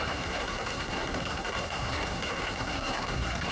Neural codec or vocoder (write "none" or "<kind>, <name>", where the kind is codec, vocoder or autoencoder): codec, SNAC